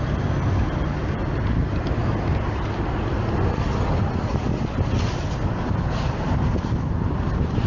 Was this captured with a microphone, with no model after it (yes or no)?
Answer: yes